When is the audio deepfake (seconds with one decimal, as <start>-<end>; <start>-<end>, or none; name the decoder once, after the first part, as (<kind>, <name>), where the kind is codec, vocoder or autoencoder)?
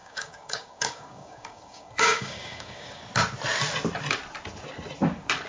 0.0-3.0 (codec, DAC)